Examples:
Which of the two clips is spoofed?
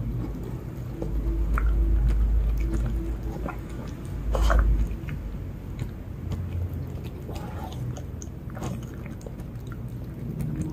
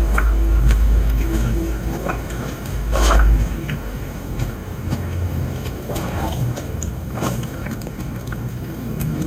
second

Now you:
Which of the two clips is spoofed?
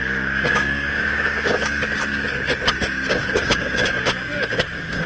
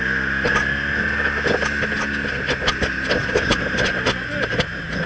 first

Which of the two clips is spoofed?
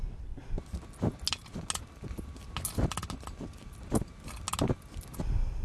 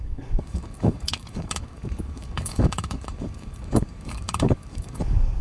second